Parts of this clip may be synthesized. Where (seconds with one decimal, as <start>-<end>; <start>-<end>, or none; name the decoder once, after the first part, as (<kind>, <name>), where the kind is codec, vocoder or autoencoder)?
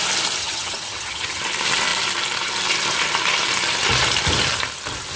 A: 0.4-1.4 (vocoder, HiFi-GAN)